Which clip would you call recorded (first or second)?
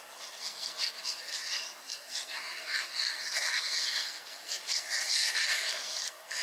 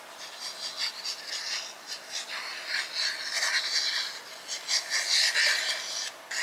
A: second